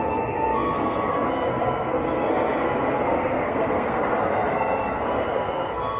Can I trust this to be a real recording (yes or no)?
no